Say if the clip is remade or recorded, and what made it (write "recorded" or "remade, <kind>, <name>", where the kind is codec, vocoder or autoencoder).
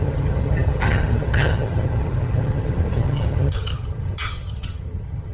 remade, vocoder, HiFi-GAN